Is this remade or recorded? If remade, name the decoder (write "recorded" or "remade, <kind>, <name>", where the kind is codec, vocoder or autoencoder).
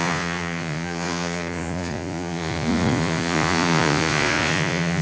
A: remade, vocoder, Vocos